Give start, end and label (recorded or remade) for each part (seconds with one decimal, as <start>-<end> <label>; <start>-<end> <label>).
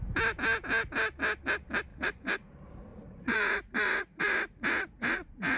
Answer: 0.0-1.9 recorded; 1.9-2.5 remade; 2.5-2.9 recorded; 2.9-5.6 remade